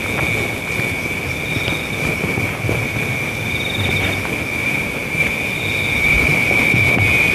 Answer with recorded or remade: recorded